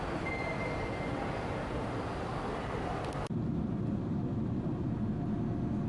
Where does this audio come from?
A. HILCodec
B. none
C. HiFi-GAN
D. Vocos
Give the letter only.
B